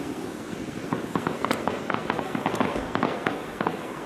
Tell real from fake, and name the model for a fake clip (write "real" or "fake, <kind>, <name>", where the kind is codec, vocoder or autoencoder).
fake, codec, SNAC